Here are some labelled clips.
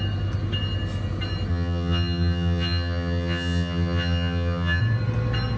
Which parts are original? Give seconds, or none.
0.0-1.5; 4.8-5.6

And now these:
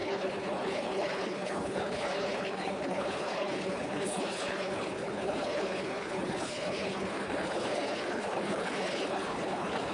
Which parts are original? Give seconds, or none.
none

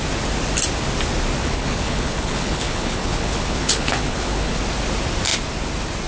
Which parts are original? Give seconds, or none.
0.0-1.4; 4.6-6.1

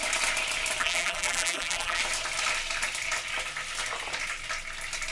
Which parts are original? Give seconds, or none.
0.0-0.8; 2.0-5.1

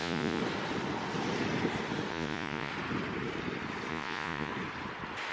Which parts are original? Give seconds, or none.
0.4-2.1; 2.7-3.9; 4.5-5.3

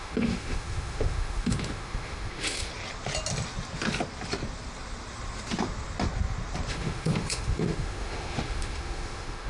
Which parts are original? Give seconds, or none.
2.7-6.7

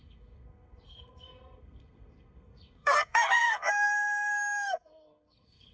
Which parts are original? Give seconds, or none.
none